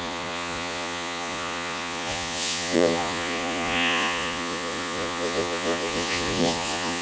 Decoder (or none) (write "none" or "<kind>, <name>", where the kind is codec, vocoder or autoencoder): vocoder, Vocos